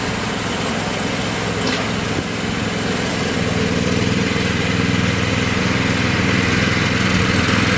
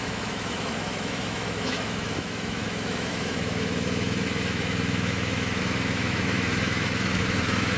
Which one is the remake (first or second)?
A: second